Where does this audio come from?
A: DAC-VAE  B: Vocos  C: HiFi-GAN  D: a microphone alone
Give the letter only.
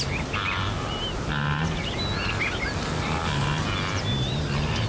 D